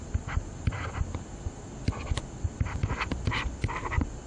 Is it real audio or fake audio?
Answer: real